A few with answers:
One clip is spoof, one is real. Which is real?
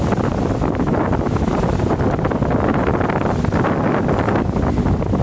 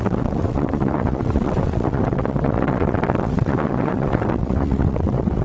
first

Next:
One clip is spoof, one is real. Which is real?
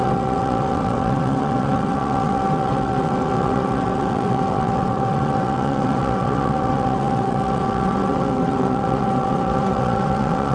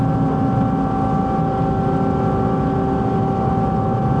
second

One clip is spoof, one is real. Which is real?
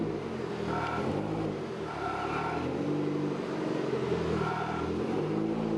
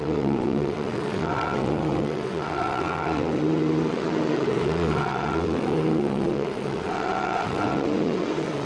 first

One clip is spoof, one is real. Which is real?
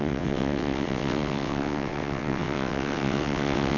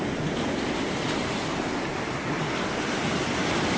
second